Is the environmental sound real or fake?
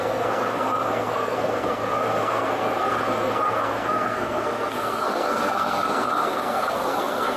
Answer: fake